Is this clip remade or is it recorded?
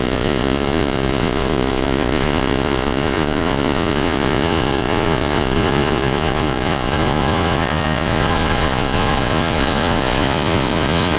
remade